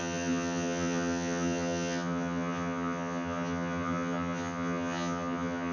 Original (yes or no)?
no